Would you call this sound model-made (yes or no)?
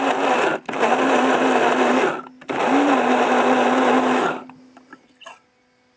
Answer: no